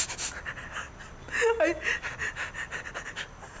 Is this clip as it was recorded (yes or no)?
yes